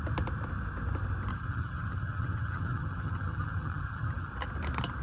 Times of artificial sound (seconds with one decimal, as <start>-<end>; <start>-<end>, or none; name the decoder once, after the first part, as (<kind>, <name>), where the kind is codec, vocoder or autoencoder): 1.3-4.3 (vocoder, HiFi-GAN)